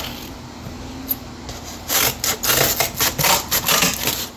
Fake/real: real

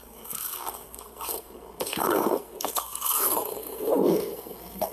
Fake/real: fake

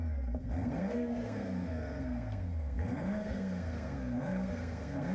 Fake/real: fake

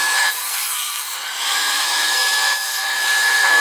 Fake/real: fake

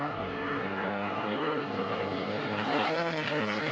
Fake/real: fake